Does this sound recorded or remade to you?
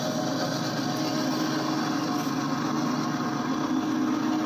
recorded